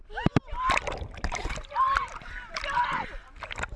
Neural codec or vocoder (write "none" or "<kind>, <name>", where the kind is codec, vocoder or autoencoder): none